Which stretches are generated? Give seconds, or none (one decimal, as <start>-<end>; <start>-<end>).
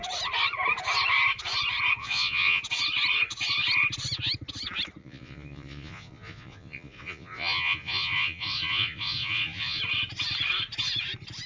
2.0-2.6; 5.0-9.8